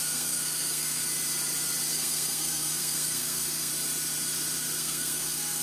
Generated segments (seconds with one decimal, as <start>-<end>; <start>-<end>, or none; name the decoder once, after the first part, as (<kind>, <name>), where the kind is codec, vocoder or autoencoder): 0.0-1.0 (codec, SNAC); 1.9-3.7; 4.8-5.6